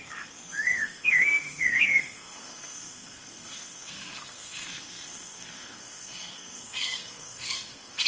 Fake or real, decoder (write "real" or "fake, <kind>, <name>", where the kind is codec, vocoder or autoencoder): fake, codec, SNAC